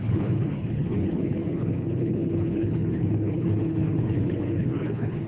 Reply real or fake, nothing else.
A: fake